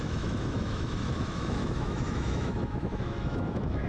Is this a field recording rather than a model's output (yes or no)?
no